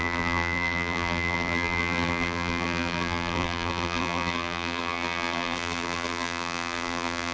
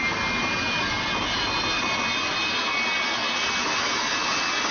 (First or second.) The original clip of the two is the second